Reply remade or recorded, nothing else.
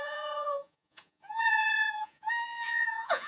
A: remade